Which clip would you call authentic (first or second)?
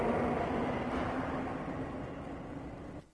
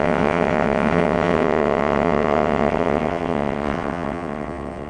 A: first